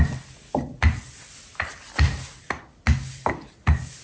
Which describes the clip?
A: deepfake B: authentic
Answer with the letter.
B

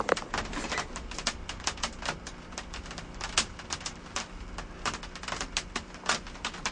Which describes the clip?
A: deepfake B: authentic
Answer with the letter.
B